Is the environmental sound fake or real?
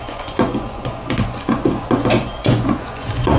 fake